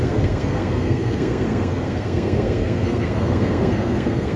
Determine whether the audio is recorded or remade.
remade